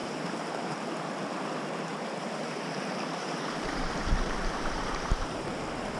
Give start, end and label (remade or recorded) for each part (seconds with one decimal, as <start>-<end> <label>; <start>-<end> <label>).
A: 0.0-0.9 remade; 0.9-1.9 recorded; 1.9-5.5 remade; 5.5-6.0 recorded